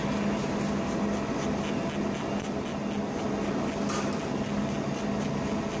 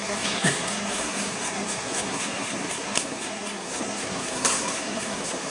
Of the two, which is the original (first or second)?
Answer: first